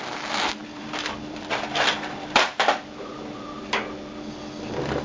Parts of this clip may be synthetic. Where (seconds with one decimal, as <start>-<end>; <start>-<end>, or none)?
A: 0.6-3.6